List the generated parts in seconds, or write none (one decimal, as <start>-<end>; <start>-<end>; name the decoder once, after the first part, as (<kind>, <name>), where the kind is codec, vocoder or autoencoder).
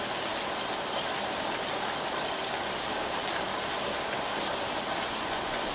5.1-5.7 (vocoder, Vocos)